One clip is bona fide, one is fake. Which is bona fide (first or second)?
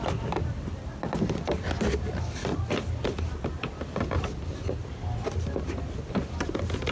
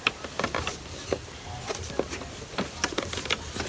first